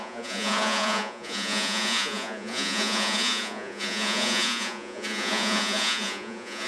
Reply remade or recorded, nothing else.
remade